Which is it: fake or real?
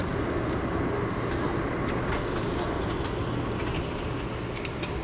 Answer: real